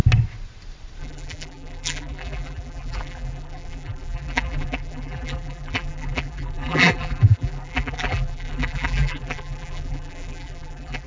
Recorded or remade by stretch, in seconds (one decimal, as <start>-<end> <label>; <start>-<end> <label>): 0.0-1.0 recorded; 1.0-11.1 remade